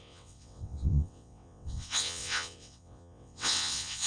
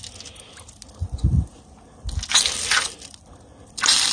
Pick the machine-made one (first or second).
first